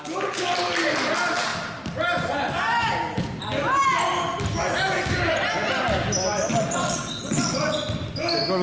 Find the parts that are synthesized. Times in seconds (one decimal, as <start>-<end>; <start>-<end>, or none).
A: 6.5-7.7